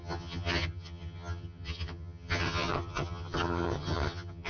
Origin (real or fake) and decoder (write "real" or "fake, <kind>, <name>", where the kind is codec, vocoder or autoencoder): fake, vocoder, HiFi-GAN